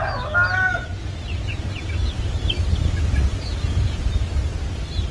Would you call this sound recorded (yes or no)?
yes